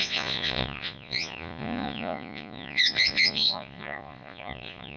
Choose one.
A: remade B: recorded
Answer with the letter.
A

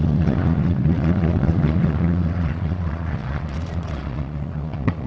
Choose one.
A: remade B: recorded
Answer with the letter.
A